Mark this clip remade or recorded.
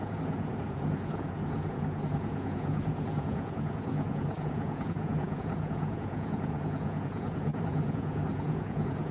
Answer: remade